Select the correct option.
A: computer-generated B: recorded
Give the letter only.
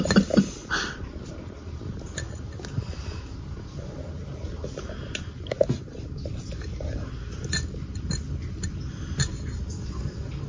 B